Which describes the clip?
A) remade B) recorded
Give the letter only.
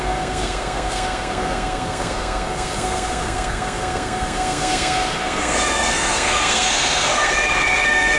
A